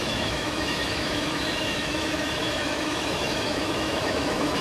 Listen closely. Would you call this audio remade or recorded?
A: remade